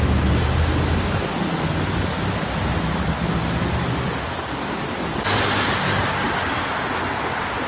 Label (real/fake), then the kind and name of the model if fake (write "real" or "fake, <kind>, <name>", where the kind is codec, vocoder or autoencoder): real